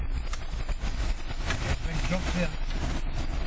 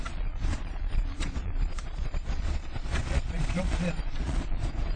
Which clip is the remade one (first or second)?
second